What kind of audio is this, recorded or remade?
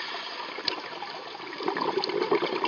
recorded